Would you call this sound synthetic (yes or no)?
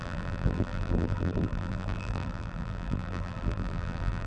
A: yes